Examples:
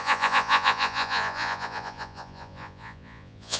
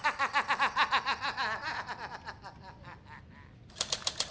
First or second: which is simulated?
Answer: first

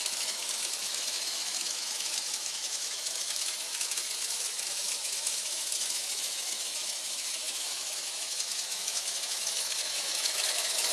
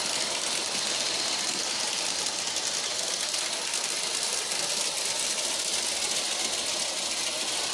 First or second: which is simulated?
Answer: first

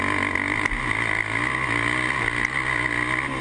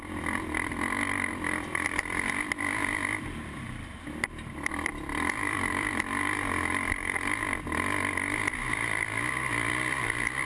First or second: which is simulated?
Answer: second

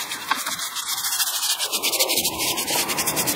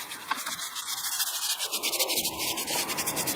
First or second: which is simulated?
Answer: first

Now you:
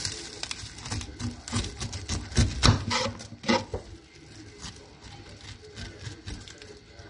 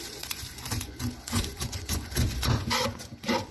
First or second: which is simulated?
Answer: second